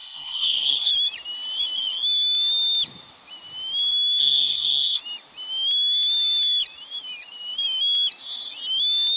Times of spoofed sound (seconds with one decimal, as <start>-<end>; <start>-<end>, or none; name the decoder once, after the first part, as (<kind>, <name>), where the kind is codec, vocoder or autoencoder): 0.0-0.9 (codec, SNAC); 4.2-5.0